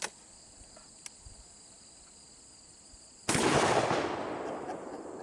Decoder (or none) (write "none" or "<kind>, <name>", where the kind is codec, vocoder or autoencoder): none